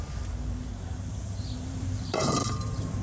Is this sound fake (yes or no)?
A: yes